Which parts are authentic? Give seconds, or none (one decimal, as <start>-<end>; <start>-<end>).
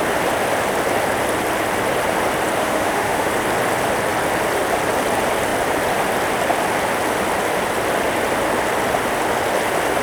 0.0-2.6; 3.3-10.0